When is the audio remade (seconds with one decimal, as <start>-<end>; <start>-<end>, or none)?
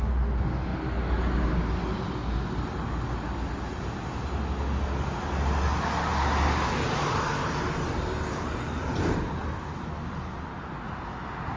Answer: none